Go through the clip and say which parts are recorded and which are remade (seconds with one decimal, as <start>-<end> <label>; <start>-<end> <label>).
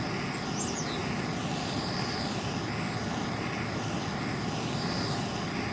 0.0-5.7 recorded